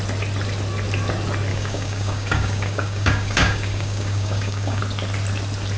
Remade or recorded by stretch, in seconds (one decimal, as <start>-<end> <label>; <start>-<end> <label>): 0.0-1.5 recorded; 1.5-4.8 remade; 4.8-5.8 recorded